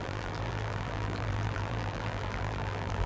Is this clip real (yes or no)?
no